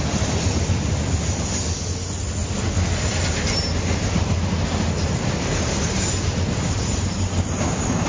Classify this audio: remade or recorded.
recorded